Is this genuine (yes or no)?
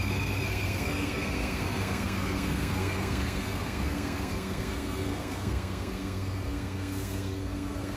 no